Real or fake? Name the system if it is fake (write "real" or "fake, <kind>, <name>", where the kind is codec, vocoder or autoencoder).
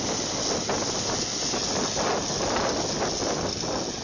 real